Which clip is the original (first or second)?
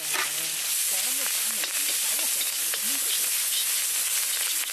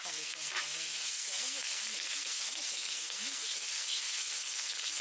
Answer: first